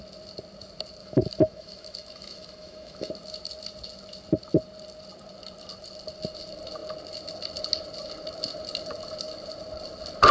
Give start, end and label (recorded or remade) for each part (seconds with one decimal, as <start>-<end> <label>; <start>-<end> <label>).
0.0-1.0 recorded; 1.0-3.1 remade; 3.1-10.3 recorded